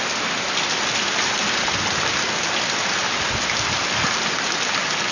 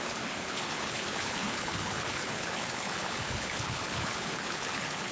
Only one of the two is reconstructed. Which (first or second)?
second